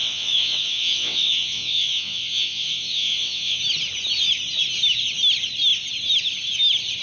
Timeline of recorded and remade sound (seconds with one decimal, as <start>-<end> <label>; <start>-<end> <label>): 0.0-3.6 remade; 3.6-7.0 recorded